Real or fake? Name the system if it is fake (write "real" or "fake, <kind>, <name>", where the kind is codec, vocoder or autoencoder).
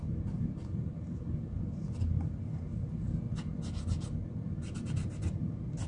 real